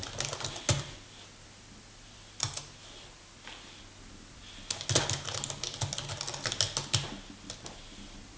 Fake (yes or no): no